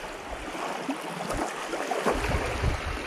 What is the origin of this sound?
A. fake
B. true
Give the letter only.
B